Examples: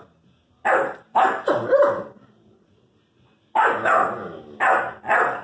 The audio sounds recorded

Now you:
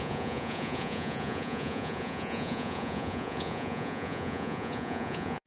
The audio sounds remade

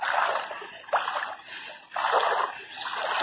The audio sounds recorded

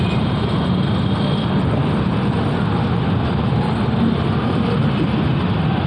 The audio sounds recorded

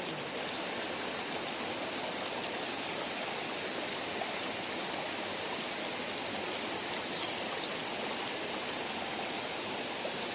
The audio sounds recorded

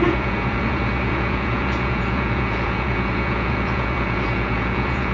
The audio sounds remade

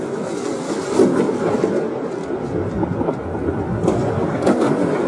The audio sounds recorded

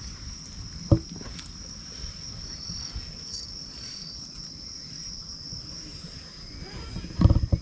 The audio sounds recorded